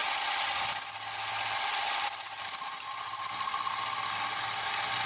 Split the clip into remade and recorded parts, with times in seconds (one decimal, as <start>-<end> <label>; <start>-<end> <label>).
0.0-5.1 recorded